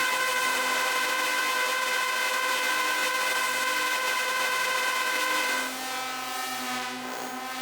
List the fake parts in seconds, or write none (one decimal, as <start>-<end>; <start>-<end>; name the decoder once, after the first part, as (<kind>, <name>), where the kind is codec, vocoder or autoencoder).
0.0-0.6 (vocoder, BigVGAN v2)